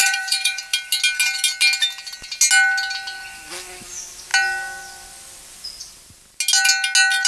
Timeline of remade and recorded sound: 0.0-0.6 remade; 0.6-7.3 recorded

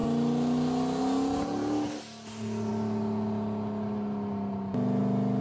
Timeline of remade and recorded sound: 0.0-5.4 recorded

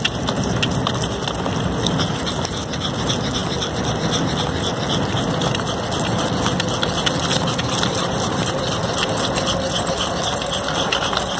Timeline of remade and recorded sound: 0.0-11.4 recorded

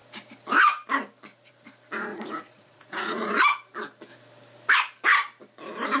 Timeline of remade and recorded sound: 0.0-2.1 recorded; 2.1-3.3 remade; 3.3-6.0 recorded